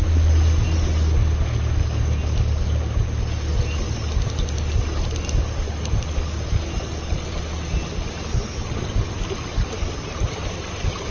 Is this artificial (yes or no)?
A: no